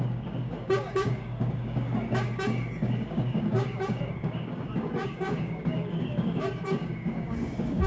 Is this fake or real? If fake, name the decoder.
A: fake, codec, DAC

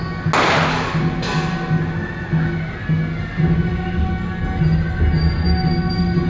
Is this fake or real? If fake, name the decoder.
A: real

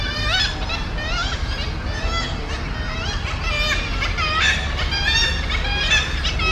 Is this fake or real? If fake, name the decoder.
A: real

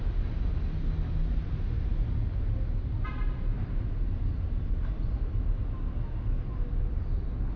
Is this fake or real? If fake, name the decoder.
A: real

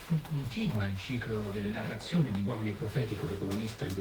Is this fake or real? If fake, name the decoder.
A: fake, autoencoder, DAC-VAE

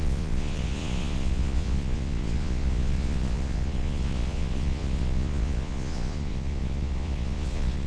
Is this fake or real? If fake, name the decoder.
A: fake, vocoder, Vocos